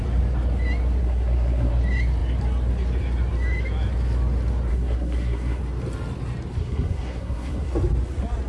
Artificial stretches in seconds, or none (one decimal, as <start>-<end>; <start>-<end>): 1.0-1.7; 4.7-5.6; 6.6-7.7